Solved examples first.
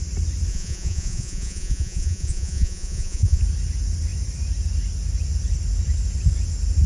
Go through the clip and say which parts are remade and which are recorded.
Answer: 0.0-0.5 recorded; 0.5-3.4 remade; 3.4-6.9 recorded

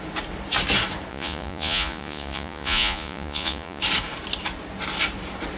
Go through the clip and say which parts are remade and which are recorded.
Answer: 0.0-1.1 recorded; 1.1-3.8 remade; 3.8-5.6 recorded

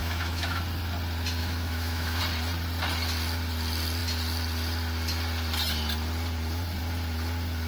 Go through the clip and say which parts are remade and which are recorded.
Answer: 0.0-0.6 remade; 0.6-1.4 recorded; 1.4-2.2 remade; 2.2-7.7 recorded

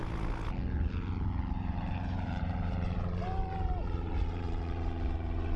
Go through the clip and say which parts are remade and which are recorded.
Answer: 0.0-1.5 recorded; 1.5-5.6 remade

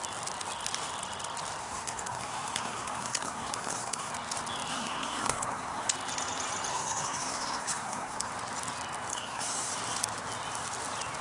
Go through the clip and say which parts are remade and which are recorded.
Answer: 0.0-1.6 recorded; 1.6-4.1 remade; 4.1-4.7 recorded; 4.7-5.9 remade; 5.9-6.7 recorded; 6.7-8.3 remade; 8.3-9.1 recorded; 9.1-9.7 remade; 9.7-11.2 recorded